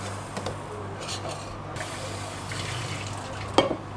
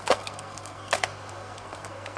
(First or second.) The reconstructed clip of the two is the second